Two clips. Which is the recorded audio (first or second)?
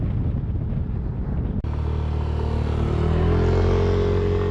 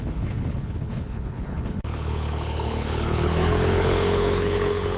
first